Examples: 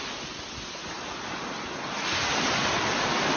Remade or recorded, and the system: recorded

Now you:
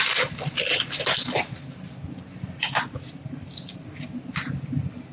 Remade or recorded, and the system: recorded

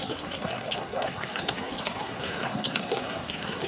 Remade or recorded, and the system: remade, codec, SNAC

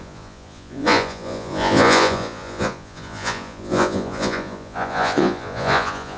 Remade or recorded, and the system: remade, vocoder, Vocos